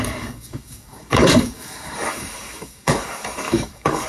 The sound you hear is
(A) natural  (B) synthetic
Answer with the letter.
B